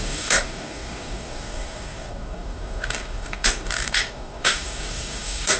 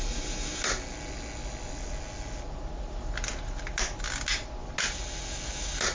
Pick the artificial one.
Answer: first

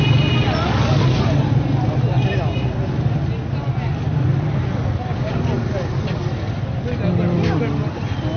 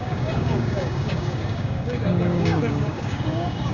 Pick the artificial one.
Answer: second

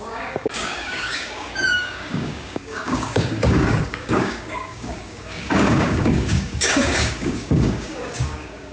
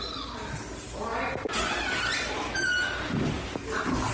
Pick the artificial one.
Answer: first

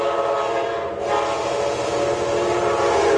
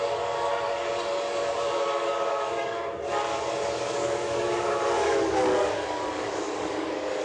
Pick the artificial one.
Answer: second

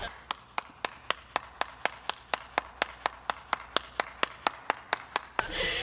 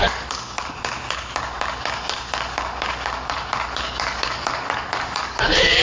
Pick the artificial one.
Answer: second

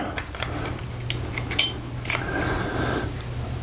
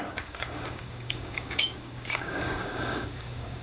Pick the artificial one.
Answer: second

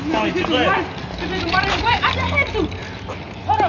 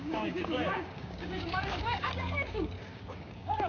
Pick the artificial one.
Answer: second